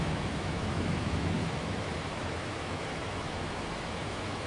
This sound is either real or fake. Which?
fake